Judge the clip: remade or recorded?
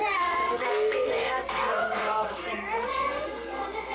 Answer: remade